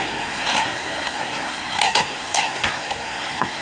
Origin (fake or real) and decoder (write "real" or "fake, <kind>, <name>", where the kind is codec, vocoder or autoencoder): fake, codec, SNAC